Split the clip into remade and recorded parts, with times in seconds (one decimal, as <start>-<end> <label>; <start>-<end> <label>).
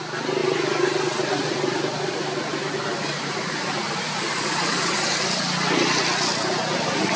0.0-7.2 recorded